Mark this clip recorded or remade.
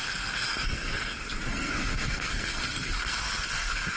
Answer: remade